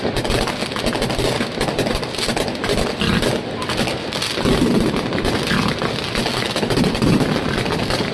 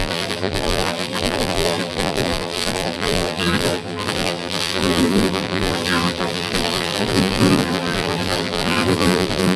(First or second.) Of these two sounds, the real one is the first